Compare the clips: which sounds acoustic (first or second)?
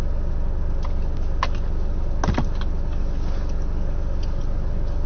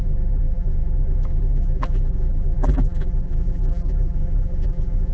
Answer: first